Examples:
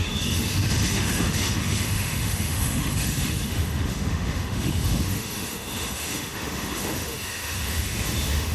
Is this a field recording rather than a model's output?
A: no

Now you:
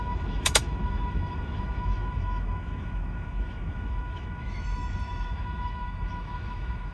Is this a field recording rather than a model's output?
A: no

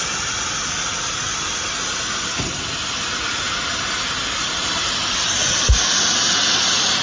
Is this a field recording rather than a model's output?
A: yes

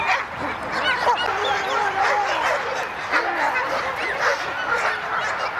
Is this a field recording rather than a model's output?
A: yes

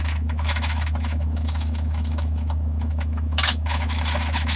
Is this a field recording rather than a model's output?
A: no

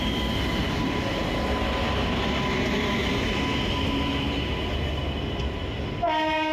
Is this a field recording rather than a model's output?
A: yes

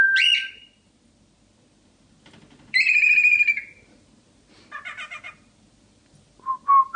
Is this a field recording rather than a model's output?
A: yes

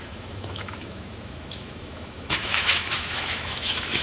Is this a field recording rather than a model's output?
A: no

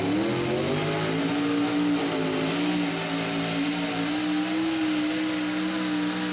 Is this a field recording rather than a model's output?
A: yes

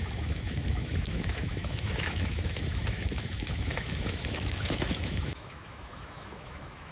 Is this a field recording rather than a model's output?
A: no